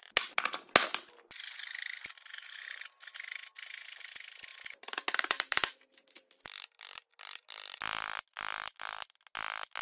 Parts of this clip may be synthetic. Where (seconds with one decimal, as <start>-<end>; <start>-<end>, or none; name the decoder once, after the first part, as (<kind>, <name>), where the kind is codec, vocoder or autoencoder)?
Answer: 2.3-2.8 (vocoder, BigVGAN v2); 4.5-6.4